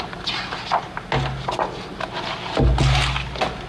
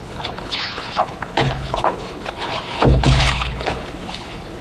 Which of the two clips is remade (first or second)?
second